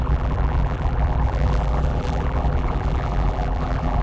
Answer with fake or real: fake